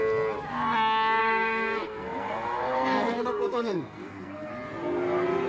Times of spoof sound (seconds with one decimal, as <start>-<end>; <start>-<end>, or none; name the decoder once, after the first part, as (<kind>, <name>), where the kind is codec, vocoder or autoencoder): 1.2-4.5 (codec, SNAC)